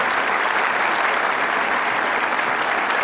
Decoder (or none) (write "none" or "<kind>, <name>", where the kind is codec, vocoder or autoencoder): none